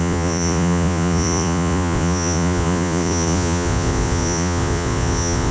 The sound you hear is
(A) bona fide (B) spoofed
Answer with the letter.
B